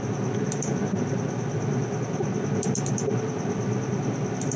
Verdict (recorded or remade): recorded